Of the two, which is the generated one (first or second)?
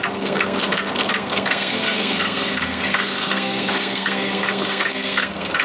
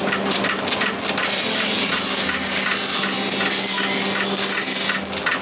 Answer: first